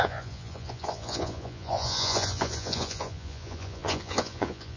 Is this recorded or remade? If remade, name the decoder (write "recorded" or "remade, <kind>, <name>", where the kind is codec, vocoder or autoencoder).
remade, vocoder, Vocos